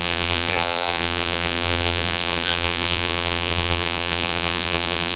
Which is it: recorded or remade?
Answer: remade